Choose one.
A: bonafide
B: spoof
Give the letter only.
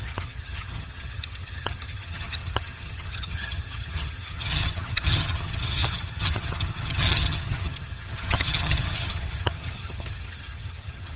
B